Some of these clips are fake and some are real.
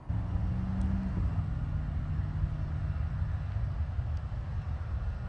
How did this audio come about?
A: real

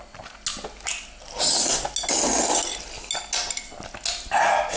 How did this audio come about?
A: real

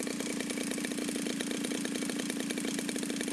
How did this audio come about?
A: real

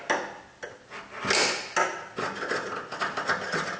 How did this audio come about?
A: real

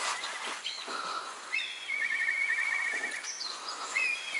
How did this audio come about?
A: fake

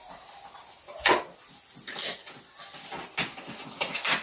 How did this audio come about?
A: real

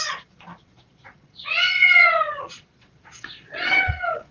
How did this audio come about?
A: fake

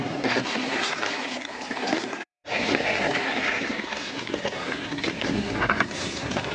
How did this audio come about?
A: fake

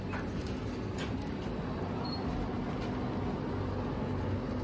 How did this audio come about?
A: real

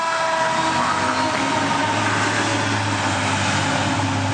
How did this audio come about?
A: real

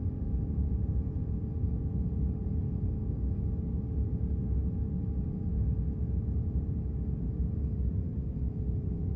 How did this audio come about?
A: fake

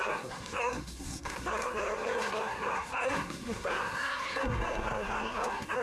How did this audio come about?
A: fake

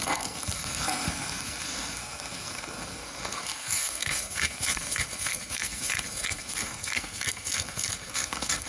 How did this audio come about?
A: fake